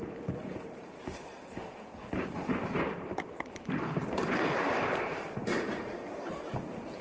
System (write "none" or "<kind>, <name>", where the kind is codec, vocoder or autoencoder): vocoder, BigVGAN v2